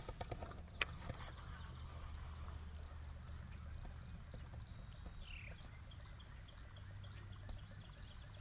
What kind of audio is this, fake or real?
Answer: real